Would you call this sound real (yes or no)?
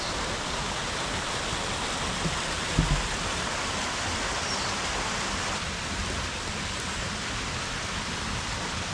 yes